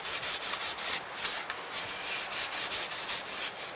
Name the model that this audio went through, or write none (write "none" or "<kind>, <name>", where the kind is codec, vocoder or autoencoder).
none